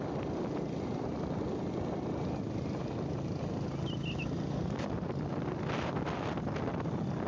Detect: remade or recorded recorded